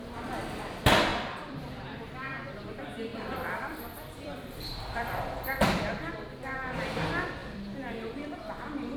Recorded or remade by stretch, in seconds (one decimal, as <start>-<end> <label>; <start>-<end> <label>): 0.0-1.1 recorded; 1.1-2.0 remade; 2.0-3.1 recorded; 3.1-6.1 remade; 6.1-7.4 recorded; 7.4-8.2 remade; 8.2-9.0 recorded